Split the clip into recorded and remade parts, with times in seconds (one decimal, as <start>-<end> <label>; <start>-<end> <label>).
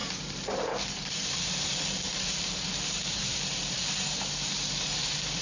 0.0-5.4 remade